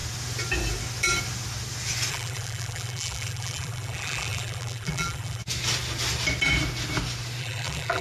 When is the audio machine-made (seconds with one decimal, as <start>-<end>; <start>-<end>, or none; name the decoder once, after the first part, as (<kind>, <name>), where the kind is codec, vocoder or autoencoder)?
2.1-5.4 (vocoder, BigVGAN v2); 7.4-8.0